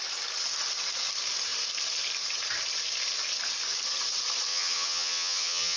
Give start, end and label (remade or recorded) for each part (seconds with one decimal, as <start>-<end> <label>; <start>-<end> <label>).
0.0-4.5 recorded; 4.5-5.8 remade